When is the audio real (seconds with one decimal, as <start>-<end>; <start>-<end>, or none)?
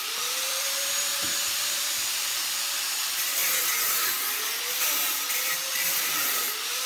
3.4-4.7